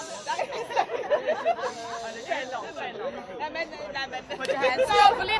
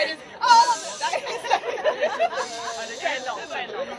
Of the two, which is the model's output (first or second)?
second